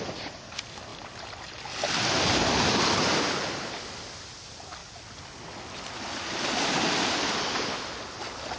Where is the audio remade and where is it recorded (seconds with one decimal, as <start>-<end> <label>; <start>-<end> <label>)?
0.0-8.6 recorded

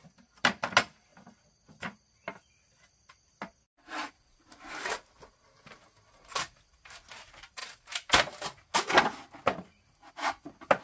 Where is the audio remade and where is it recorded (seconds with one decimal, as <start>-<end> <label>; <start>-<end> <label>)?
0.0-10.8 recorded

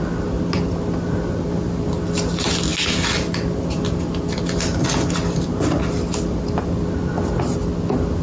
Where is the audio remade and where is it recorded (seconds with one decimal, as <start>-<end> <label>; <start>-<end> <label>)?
0.0-8.2 recorded

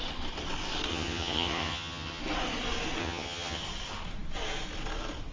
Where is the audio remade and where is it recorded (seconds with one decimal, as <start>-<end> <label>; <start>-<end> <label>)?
0.0-0.9 recorded; 0.9-2.2 remade; 2.2-3.0 recorded; 3.0-3.6 remade; 3.6-5.3 recorded

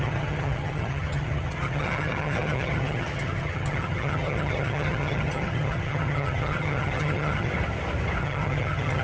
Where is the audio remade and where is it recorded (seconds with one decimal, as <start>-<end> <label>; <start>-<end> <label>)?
0.0-7.5 remade; 7.5-8.2 recorded; 8.2-9.0 remade